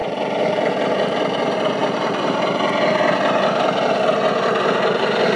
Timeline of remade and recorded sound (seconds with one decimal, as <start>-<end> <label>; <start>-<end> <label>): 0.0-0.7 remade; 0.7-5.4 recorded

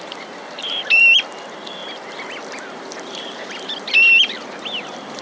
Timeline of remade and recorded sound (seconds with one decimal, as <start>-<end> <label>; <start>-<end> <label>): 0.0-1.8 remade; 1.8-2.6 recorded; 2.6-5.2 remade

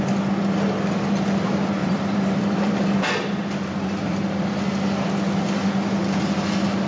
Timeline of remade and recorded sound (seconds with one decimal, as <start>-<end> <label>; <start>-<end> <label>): 0.0-1.8 recorded; 1.8-4.4 remade; 4.4-6.9 recorded

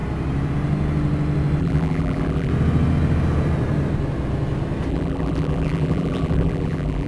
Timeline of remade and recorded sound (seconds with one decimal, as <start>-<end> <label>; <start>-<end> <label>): 0.0-1.6 recorded; 1.6-2.5 remade; 2.5-4.9 recorded; 4.9-7.1 remade

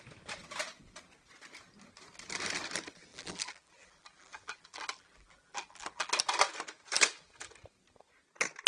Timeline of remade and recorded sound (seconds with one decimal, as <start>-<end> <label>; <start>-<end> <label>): 0.0-3.1 recorded; 3.1-6.1 remade; 6.1-8.7 recorded